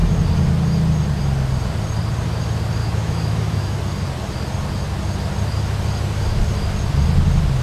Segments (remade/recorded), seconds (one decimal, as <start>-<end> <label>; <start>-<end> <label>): 0.0-2.8 recorded; 2.8-3.8 remade; 3.8-7.6 recorded